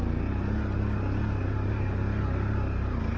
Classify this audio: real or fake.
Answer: real